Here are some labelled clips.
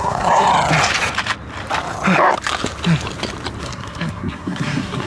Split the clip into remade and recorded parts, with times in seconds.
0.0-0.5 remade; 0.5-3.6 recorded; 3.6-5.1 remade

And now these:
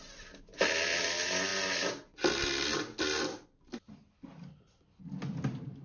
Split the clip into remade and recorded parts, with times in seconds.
0.0-5.8 recorded

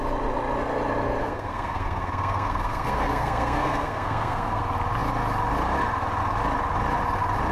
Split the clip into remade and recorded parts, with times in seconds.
0.0-1.2 recorded; 1.2-4.6 remade; 4.6-7.5 recorded

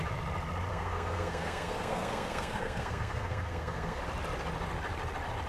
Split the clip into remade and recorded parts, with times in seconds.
0.0-0.7 recorded; 0.7-4.0 remade; 4.0-5.5 recorded

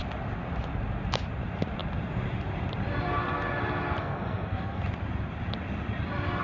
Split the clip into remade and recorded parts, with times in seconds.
0.0-4.0 recorded; 4.0-4.8 remade; 4.8-6.4 recorded

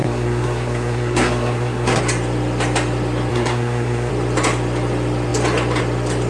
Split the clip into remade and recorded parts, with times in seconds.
0.0-2.0 remade; 2.0-3.3 recorded; 3.3-4.1 remade; 4.1-6.3 recorded